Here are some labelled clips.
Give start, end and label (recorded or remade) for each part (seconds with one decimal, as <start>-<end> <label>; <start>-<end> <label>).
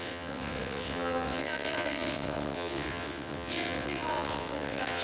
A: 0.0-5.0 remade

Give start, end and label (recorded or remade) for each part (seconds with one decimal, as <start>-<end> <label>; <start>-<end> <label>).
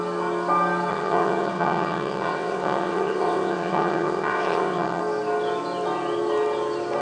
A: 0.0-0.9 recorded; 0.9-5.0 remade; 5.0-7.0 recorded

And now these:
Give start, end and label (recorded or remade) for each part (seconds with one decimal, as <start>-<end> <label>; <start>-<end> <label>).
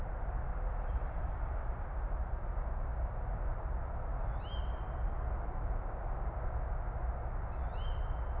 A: 0.0-8.4 recorded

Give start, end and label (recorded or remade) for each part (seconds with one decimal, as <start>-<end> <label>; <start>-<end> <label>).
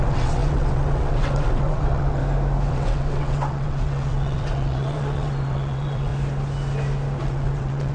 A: 0.0-2.2 remade; 2.2-2.7 recorded; 2.7-6.1 remade; 6.1-7.2 recorded; 7.2-7.9 remade